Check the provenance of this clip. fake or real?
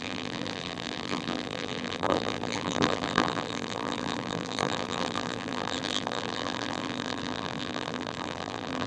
fake